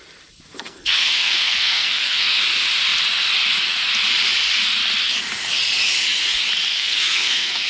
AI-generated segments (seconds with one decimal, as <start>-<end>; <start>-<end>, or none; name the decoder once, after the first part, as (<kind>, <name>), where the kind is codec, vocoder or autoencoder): 0.5-2.4 (codec, SNAC); 6.7-7.7